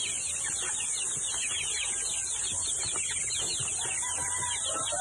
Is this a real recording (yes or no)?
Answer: yes